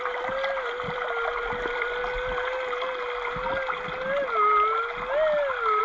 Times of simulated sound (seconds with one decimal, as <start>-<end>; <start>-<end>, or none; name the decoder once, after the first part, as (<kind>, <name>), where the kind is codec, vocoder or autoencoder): 0.0-2.0 (vocoder, BigVGAN v2)